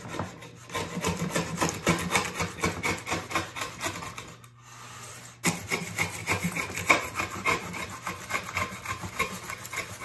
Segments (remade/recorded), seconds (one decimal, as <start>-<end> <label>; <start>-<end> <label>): 0.0-6.2 recorded; 6.2-7.9 remade; 7.9-10.0 recorded